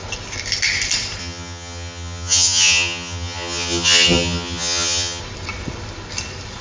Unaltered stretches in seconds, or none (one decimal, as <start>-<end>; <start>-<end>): 0.0-1.2; 5.2-6.6